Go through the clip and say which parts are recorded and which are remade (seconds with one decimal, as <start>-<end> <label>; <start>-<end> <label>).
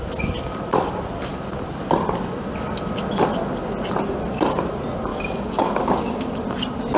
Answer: 0.0-5.1 recorded; 5.1-6.4 remade; 6.4-7.0 recorded